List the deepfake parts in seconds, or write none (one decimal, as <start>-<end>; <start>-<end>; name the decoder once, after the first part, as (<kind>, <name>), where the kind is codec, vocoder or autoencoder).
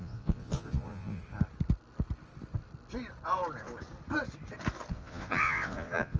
0.0-1.2 (vocoder, Vocos); 4.9-6.2